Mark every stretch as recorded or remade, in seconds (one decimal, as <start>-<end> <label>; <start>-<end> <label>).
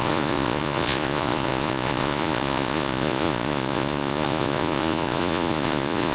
0.0-6.1 remade